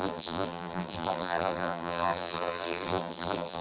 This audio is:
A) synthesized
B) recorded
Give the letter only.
A